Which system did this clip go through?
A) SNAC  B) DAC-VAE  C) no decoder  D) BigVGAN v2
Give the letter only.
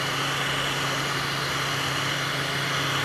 C